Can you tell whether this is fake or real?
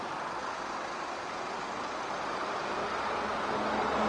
real